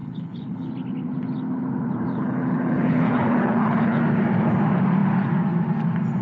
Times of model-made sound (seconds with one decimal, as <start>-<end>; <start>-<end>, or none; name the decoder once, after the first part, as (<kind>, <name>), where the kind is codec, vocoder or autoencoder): 0.0-0.7 (codec, HILCodec); 2.1-4.0